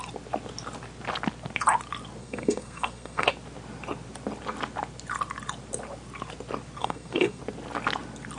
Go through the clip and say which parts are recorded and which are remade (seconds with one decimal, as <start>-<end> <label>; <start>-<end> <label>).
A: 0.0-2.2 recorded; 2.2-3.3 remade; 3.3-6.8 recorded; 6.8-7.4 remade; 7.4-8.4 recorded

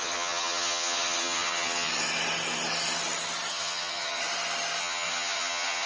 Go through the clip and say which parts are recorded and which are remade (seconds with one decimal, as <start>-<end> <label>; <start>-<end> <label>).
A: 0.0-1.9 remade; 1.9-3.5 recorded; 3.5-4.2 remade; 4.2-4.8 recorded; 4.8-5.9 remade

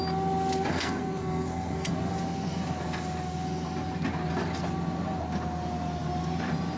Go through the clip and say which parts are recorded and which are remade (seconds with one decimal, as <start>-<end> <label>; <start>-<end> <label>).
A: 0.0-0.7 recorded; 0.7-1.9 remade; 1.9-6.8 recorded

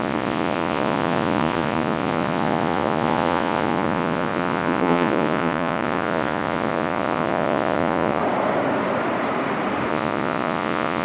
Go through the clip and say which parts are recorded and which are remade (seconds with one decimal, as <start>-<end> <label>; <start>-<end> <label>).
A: 0.0-8.2 remade; 8.2-9.9 recorded; 9.9-11.0 remade

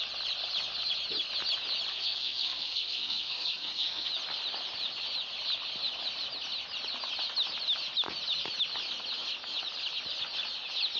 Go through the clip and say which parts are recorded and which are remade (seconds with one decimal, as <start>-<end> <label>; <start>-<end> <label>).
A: 0.0-1.9 recorded; 1.9-4.1 remade; 4.1-11.0 recorded

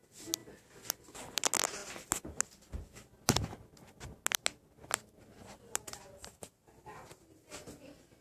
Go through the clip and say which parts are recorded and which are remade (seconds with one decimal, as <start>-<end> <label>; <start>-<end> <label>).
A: 0.0-8.2 recorded

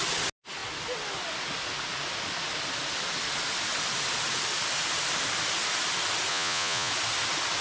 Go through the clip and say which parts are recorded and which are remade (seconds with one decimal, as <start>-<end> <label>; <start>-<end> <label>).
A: 0.0-6.3 recorded; 6.3-6.9 remade; 6.9-7.6 recorded

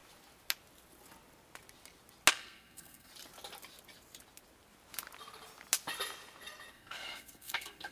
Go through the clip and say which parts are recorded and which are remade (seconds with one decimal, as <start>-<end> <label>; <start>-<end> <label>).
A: 0.0-2.3 recorded; 2.3-3.1 remade; 3.1-6.7 recorded; 6.7-7.9 remade